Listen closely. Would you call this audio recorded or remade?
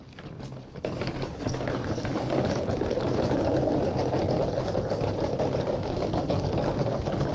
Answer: remade